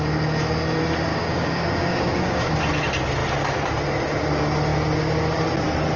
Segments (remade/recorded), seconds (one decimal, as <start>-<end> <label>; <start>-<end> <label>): 0.0-1.1 recorded; 1.1-2.5 remade; 2.5-6.0 recorded